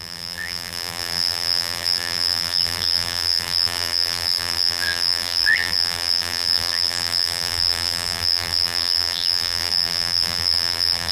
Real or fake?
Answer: fake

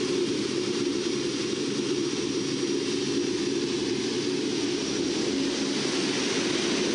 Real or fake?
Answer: real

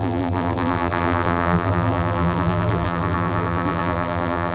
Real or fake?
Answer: fake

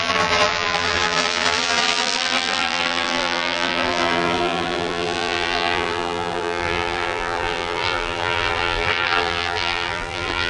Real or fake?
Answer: fake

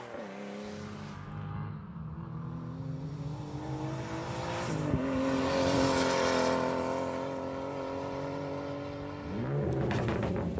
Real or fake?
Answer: real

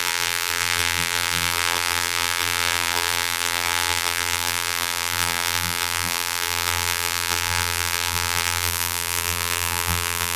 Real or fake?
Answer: fake